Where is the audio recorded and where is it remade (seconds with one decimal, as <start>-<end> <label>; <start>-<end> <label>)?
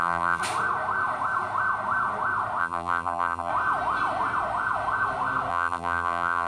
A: 0.0-0.4 remade; 0.4-2.6 recorded; 2.6-3.5 remade; 3.5-5.5 recorded; 5.5-6.5 remade